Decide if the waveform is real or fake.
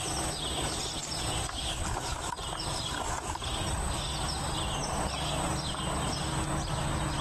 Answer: real